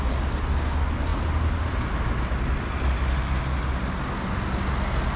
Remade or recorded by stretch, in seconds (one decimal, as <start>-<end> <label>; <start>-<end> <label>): 0.0-5.2 recorded